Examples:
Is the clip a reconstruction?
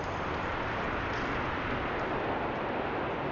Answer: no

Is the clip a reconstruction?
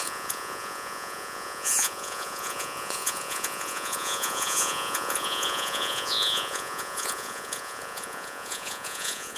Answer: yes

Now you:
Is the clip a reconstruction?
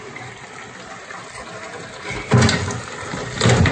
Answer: no